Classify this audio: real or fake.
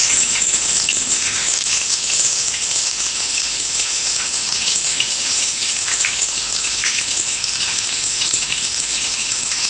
fake